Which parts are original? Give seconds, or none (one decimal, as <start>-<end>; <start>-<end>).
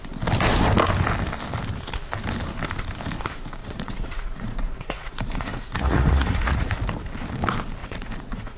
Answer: 0.0-3.6; 6.8-7.8